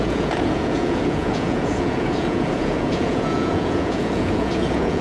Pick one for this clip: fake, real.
fake